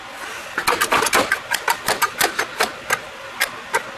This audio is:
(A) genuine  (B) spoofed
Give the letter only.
A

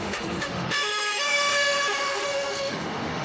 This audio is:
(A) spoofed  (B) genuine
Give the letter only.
A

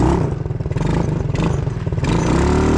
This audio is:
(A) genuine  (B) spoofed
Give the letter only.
A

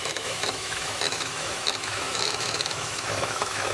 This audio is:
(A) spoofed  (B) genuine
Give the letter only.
A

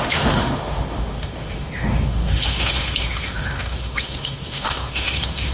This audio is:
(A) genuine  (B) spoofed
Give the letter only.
B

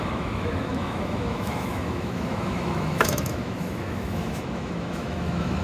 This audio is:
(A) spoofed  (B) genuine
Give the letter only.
A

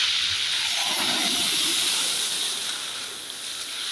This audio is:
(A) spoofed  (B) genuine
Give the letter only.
B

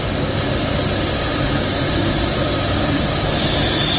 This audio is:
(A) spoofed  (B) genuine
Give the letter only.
B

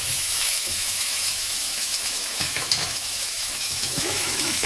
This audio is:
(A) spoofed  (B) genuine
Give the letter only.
A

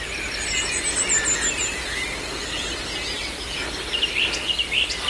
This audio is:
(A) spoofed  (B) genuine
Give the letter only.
B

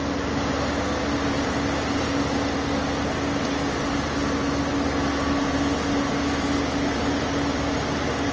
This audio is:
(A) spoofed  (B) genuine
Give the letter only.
B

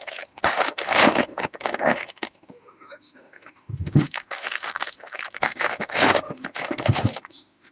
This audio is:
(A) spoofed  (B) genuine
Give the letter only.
A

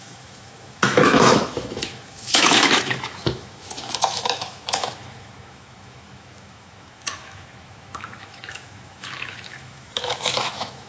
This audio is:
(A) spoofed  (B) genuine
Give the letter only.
A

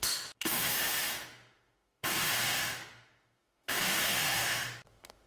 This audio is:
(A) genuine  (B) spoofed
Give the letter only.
B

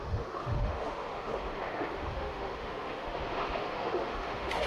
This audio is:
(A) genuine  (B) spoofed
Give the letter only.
B